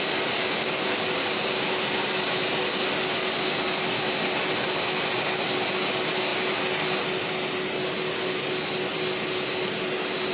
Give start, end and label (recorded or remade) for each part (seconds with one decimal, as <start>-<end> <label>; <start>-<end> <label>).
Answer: 0.0-10.3 recorded